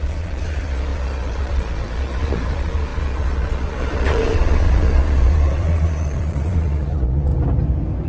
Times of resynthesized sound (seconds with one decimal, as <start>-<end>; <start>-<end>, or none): 0.0-7.3